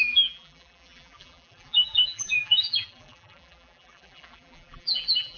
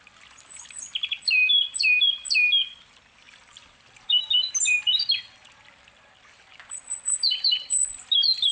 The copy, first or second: first